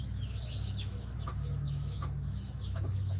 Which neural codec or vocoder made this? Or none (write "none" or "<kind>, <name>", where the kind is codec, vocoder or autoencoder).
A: autoencoder, DAC-VAE